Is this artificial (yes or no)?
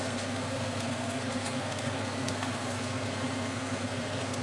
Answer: yes